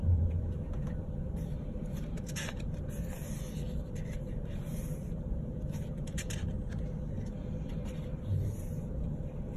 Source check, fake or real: fake